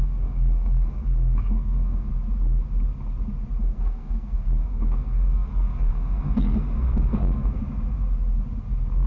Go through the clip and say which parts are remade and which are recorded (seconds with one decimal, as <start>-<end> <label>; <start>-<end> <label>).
0.0-2.1 remade; 2.1-3.6 recorded; 3.6-7.6 remade; 7.6-9.1 recorded